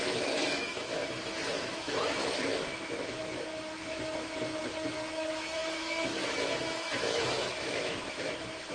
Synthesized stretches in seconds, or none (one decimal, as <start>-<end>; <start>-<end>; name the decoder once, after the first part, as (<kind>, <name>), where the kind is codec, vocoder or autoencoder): 0.0-8.7 (autoencoder, DAC-VAE)